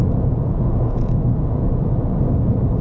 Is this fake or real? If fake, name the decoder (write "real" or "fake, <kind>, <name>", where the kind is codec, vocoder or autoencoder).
fake, vocoder, Vocos